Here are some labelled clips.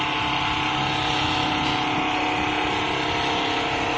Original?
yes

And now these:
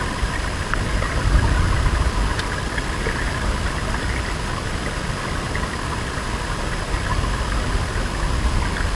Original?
yes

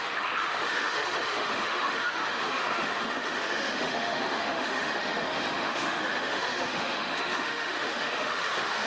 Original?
no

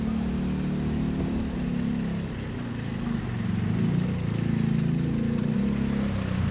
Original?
yes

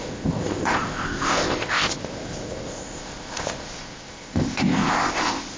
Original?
no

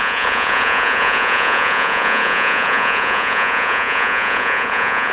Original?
no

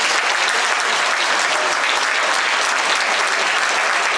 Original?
yes